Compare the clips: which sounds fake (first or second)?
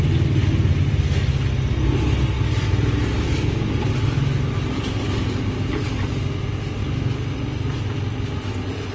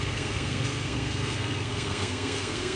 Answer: second